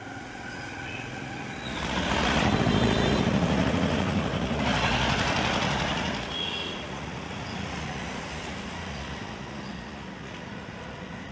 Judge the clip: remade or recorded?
remade